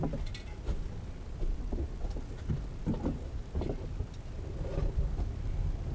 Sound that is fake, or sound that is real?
real